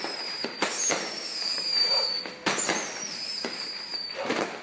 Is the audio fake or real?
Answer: real